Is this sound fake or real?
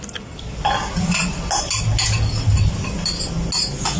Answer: real